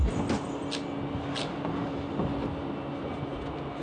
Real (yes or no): yes